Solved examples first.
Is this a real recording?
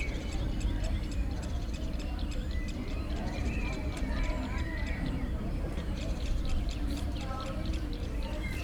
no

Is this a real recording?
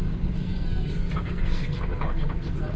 no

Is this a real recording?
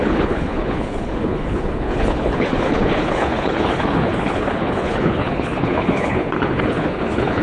no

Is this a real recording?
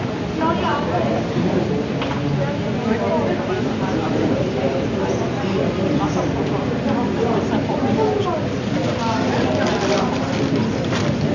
yes